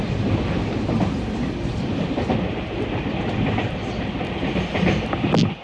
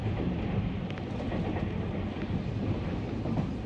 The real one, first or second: second